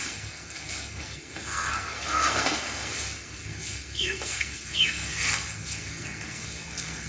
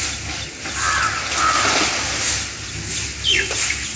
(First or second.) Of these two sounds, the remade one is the first